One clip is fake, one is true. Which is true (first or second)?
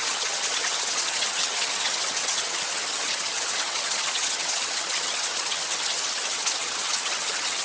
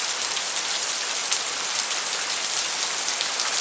second